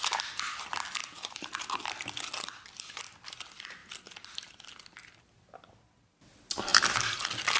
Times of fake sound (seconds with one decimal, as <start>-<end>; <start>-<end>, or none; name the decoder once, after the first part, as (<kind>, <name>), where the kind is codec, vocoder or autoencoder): 1.0-1.5 (vocoder, BigVGAN v2)